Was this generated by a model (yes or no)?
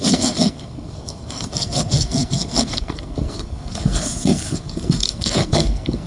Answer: yes